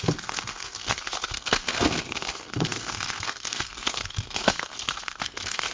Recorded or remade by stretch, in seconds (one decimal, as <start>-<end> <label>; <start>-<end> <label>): 0.0-5.7 remade